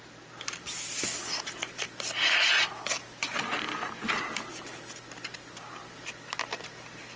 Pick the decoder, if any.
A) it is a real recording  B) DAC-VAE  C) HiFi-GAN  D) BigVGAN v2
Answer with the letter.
A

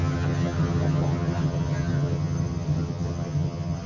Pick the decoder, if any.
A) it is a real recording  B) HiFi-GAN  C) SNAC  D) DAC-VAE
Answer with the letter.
B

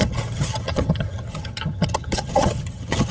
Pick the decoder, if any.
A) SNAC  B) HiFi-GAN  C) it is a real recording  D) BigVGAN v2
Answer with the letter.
B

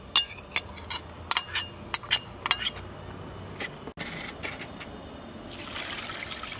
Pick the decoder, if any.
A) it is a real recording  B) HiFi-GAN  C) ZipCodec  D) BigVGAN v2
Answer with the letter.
A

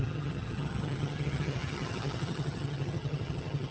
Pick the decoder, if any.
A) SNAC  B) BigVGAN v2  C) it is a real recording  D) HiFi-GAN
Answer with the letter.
D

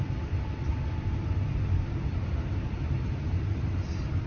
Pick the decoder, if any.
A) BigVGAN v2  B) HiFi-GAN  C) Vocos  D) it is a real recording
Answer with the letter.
D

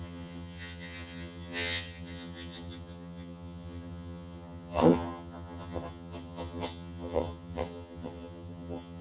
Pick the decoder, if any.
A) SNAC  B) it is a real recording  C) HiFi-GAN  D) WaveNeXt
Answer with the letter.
C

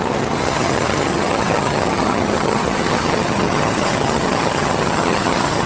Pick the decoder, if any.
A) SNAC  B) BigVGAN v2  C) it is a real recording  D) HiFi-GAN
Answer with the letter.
D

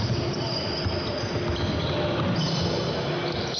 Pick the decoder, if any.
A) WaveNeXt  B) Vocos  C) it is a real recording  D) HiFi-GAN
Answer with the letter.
C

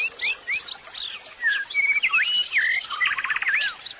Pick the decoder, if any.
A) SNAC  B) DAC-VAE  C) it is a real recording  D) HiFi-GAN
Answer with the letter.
C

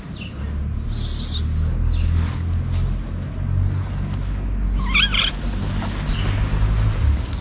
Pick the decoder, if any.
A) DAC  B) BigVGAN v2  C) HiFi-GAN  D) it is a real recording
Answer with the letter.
D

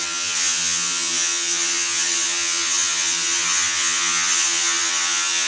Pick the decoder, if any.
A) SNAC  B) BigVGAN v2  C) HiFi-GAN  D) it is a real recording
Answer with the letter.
C